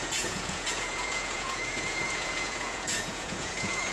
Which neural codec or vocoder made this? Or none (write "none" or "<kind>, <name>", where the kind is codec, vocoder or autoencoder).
vocoder, Vocos